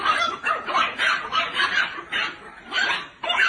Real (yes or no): yes